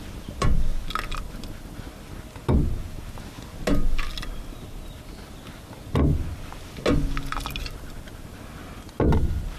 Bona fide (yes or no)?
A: yes